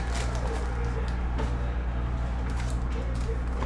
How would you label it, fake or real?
real